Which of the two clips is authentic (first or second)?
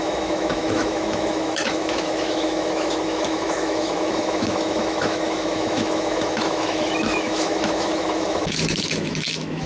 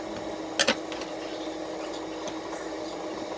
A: second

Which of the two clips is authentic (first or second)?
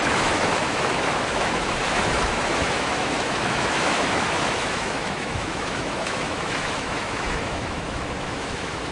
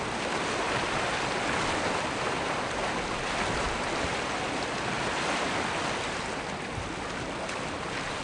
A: second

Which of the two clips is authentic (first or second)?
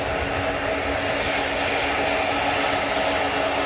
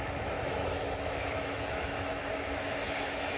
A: first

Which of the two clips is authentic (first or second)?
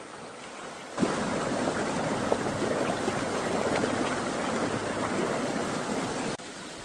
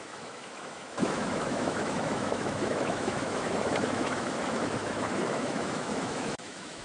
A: first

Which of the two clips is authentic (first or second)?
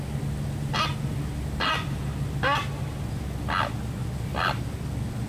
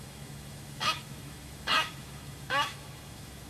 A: first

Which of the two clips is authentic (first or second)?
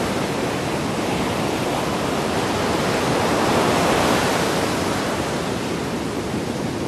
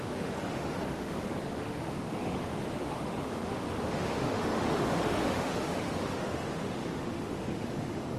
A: first